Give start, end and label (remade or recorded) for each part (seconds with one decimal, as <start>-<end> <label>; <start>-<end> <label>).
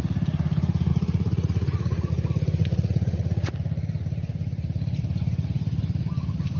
0.0-0.9 recorded; 0.9-2.1 remade; 2.1-2.6 recorded; 2.6-3.5 remade; 3.5-6.6 recorded